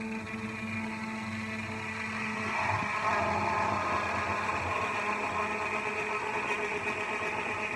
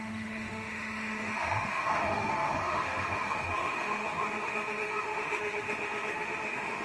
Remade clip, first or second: second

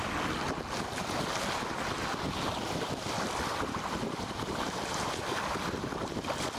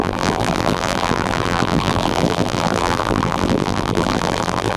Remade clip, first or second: second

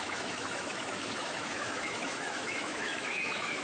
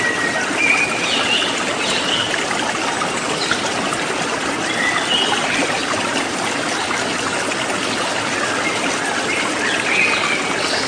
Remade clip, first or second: first